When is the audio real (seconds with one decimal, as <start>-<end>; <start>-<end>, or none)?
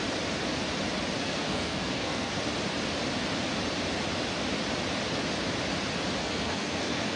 0.0-1.2; 2.3-6.2